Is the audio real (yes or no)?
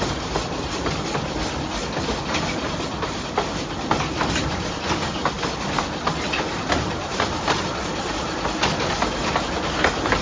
yes